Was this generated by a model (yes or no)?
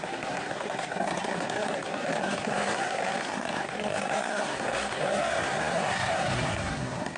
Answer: yes